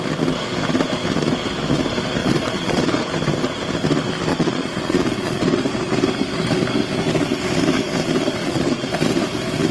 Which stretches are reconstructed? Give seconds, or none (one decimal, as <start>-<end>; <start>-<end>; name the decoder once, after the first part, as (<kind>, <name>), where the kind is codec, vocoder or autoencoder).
2.2-3.1 (vocoder, Vocos); 4.3-5.7; 8.4-8.9